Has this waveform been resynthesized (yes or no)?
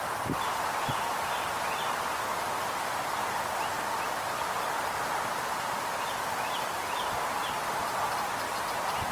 no